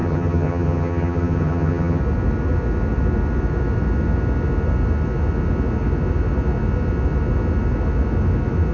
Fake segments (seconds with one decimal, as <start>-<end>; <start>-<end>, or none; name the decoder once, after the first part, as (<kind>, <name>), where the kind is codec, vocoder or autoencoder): 0.0-2.0 (vocoder, HiFi-GAN)